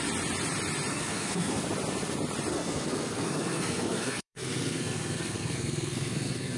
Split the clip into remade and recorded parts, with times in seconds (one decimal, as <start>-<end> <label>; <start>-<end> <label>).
0.0-0.9 recorded; 0.9-1.6 remade; 1.6-2.5 recorded; 2.5-6.6 remade